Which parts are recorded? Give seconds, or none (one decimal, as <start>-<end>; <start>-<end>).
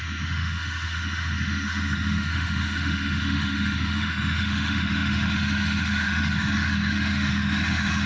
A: none